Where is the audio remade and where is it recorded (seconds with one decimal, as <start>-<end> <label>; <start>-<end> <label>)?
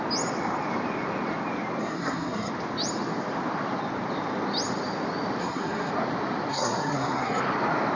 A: 0.0-1.8 recorded; 1.8-2.5 remade; 2.5-5.4 recorded; 5.4-5.9 remade; 5.9-6.5 recorded; 6.5-7.4 remade; 7.4-8.0 recorded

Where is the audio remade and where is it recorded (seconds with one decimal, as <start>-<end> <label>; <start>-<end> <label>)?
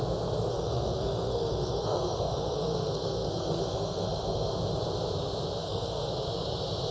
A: 0.0-0.5 recorded; 0.5-4.6 remade; 4.6-5.6 recorded; 5.6-6.1 remade; 6.1-6.9 recorded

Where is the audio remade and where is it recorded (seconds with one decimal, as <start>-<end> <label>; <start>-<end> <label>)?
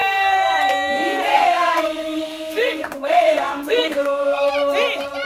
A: 0.0-0.7 remade; 0.7-1.3 recorded; 1.3-4.5 remade; 4.5-5.3 recorded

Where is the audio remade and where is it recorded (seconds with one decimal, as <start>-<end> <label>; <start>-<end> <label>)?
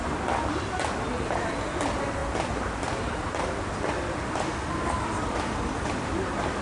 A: 0.0-6.6 recorded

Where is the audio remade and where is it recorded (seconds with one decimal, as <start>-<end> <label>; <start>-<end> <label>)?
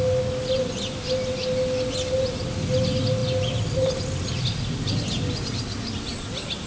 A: 0.0-6.7 recorded